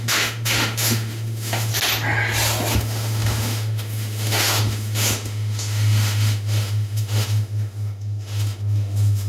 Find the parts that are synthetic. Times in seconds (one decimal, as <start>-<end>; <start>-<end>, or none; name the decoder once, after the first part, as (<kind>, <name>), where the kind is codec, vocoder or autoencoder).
0.0-1.7 (autoencoder, DAC-VAE); 2.7-9.3